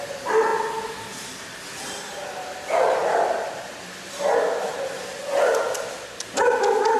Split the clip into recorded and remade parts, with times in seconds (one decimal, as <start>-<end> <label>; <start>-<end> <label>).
0.0-7.0 recorded